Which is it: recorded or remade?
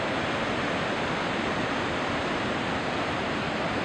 recorded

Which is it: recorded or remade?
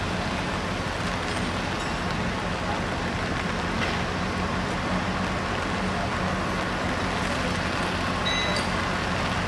recorded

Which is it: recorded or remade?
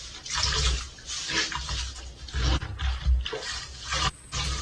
recorded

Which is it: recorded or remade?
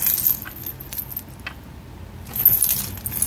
recorded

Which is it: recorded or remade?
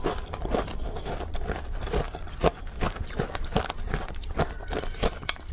remade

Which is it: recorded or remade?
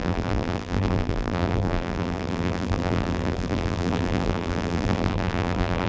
remade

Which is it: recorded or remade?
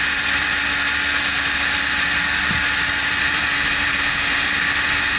remade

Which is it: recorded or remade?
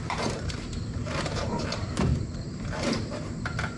remade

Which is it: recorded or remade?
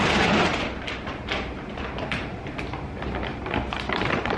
remade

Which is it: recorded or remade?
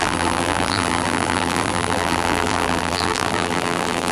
remade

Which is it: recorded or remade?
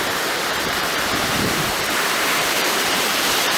remade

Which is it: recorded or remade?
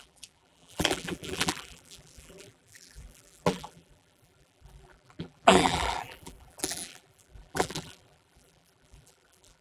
remade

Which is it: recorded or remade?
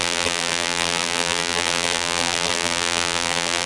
remade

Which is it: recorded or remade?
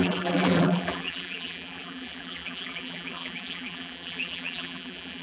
remade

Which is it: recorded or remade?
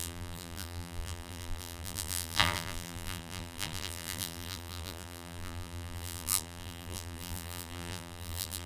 remade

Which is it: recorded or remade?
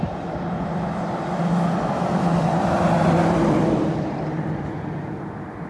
remade